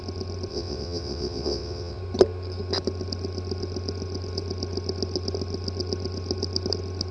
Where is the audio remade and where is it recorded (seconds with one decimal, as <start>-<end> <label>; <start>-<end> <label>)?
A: 0.0-0.5 recorded; 0.5-2.0 remade; 2.0-7.1 recorded